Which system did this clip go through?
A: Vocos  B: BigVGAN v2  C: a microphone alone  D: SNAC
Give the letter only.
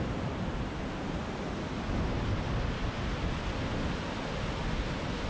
C